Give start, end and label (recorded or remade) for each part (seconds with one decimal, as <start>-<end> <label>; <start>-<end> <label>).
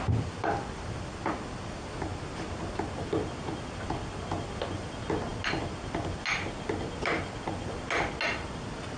0.0-9.0 recorded